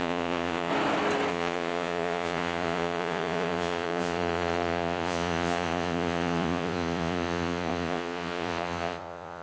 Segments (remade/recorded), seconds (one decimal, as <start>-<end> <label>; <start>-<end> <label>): 0.0-0.7 remade; 0.7-1.3 recorded; 1.3-9.4 remade